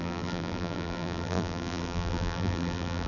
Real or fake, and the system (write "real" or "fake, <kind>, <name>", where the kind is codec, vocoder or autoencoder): fake, vocoder, BigVGAN v2